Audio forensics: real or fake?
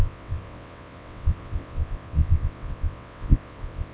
fake